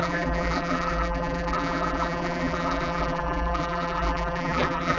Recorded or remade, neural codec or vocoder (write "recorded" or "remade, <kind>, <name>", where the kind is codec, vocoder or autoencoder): remade, vocoder, BigVGAN v2